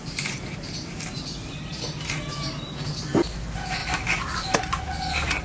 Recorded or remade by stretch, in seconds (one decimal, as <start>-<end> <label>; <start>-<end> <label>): 0.0-1.4 recorded; 1.4-2.6 remade; 2.6-3.8 recorded; 3.8-4.6 remade; 4.6-5.4 recorded